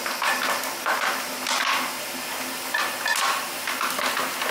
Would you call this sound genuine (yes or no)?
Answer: yes